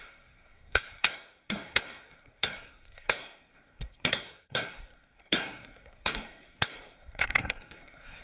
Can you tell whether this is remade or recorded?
remade